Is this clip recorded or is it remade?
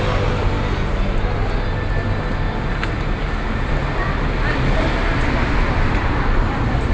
recorded